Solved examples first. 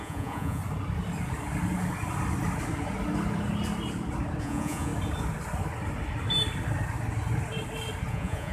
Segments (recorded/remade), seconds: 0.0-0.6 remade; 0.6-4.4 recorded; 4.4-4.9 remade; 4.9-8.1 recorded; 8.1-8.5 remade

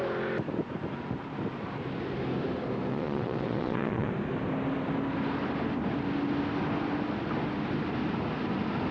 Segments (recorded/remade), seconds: 0.0-2.9 recorded; 2.9-4.1 remade; 4.1-8.9 recorded

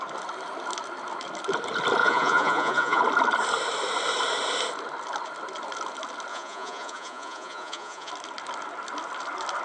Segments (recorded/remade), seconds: 0.0-2.0 recorded; 2.0-3.0 remade; 3.0-6.3 recorded; 6.3-8.1 remade; 8.1-9.6 recorded